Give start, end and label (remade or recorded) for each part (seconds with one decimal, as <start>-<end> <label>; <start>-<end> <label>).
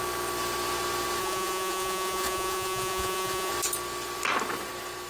0.0-1.2 recorded; 1.2-3.5 remade; 3.5-5.1 recorded